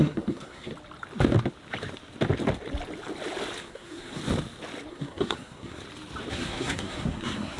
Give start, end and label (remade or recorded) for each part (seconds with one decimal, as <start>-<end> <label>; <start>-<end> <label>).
0.0-0.7 remade; 0.7-3.6 recorded; 3.6-4.2 remade; 4.2-4.9 recorded; 4.9-5.8 remade; 5.8-6.3 recorded; 6.3-7.6 remade

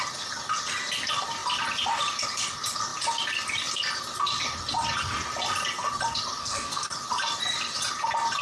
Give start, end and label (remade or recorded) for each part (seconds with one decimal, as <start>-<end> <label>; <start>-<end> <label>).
0.0-6.4 recorded; 6.4-6.9 remade; 6.9-8.4 recorded